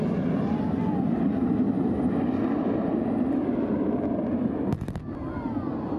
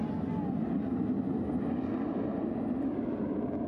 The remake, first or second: first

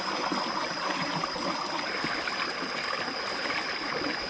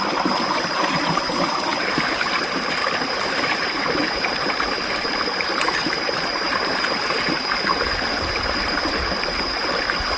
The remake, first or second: second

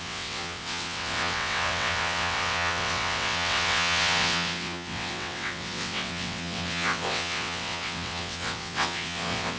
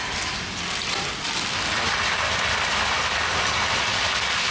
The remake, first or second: first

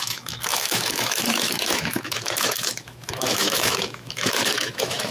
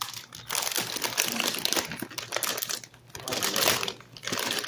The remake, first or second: first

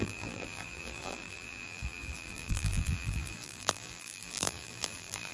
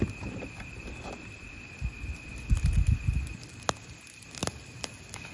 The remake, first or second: first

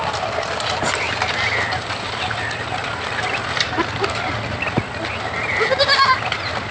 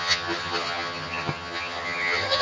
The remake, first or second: second